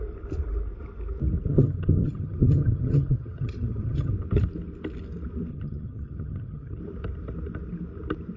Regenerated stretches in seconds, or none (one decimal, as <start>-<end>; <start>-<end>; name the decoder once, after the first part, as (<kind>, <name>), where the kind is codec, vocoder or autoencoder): 1.5-4.1 (vocoder, HiFi-GAN); 5.5-6.8